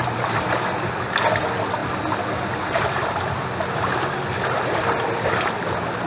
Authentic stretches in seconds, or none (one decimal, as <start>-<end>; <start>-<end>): 0.0-6.1

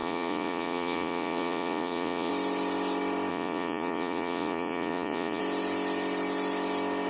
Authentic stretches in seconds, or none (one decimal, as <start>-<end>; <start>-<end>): 2.3-3.3; 5.4-7.1

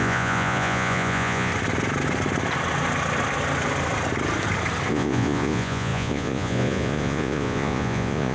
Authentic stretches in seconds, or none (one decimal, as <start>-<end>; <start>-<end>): 1.5-4.9

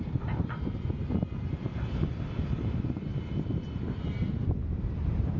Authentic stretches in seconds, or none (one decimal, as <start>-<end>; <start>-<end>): 1.0-2.4